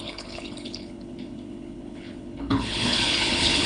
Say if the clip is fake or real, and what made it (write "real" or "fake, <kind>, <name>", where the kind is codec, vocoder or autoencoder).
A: fake, codec, HILCodec